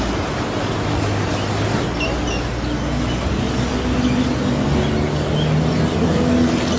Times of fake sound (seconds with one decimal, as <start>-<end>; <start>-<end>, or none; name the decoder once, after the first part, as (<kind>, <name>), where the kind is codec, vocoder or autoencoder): none